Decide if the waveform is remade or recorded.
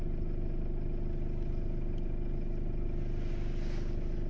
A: recorded